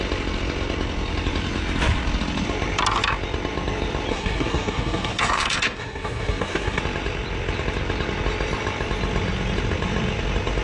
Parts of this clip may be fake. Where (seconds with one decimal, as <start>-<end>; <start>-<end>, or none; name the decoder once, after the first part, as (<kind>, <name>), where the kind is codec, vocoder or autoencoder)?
4.1-6.8 (codec, SNAC)